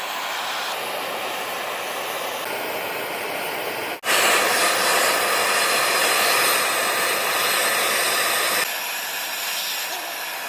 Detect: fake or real real